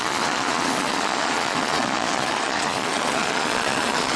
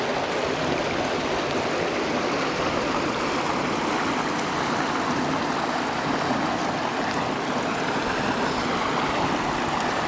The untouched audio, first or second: second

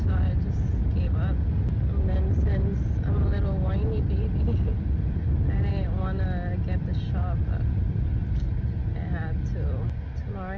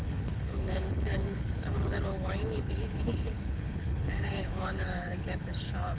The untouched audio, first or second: first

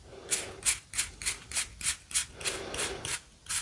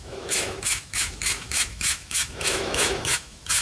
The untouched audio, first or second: first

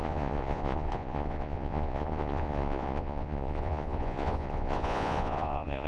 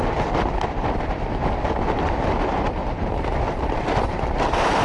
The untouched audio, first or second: second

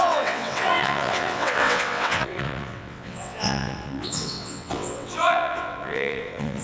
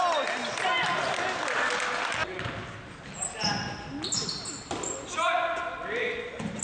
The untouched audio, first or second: second